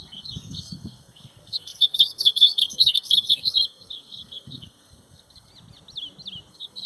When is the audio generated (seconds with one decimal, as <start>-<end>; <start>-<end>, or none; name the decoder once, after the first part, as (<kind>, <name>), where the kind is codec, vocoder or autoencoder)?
0.0-5.5 (codec, SNAC); 6.5-6.9